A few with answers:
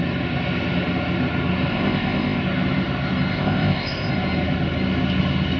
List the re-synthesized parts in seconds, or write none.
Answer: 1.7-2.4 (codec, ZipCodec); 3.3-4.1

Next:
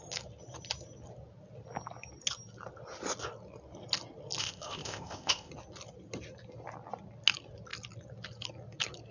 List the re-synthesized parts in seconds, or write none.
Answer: 4.4-5.5 (codec, ZipCodec)